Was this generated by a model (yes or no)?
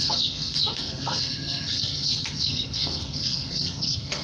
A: yes